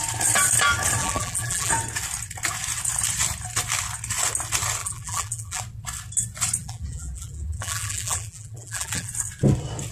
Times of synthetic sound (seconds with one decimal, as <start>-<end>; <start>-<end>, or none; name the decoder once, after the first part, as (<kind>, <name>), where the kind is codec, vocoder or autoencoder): 1.0-1.7 (vocoder, BigVGAN v2); 4.8-5.6; 6.6-9.1